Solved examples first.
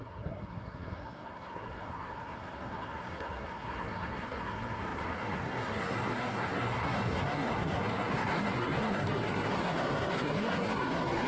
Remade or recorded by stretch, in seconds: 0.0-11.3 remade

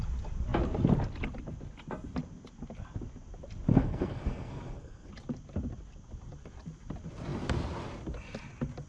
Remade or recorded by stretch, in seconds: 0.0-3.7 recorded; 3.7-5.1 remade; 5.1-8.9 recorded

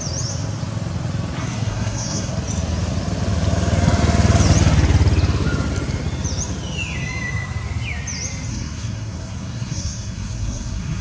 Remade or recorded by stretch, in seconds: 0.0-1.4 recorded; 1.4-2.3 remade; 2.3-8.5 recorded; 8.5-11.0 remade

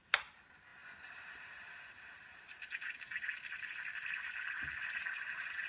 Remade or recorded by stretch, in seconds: 0.0-5.7 recorded

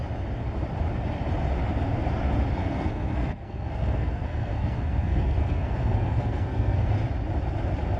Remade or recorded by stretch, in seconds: 0.0-2.6 recorded; 2.6-6.9 remade; 6.9-8.0 recorded